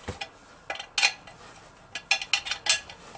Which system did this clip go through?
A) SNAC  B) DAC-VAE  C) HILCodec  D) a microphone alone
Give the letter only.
D